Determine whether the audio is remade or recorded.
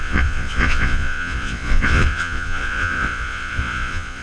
remade